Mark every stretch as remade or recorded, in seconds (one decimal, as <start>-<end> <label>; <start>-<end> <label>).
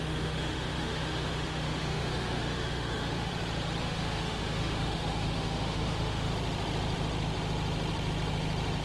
0.0-3.3 remade; 3.3-3.8 recorded; 3.8-6.3 remade; 6.3-8.8 recorded